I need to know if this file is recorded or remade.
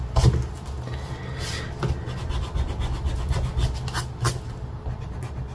recorded